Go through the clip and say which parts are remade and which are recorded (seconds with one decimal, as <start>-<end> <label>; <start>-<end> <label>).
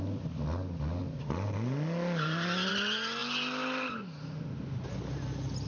0.0-5.7 recorded